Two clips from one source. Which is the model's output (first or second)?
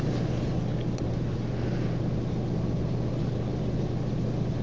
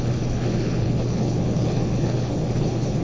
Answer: second